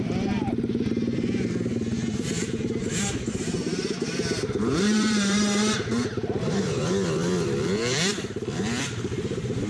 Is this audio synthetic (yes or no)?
yes